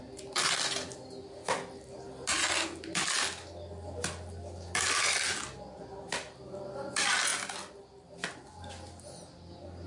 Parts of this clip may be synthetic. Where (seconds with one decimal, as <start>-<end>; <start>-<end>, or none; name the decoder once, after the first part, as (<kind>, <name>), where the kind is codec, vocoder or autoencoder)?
none